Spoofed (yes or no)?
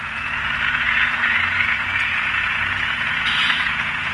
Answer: yes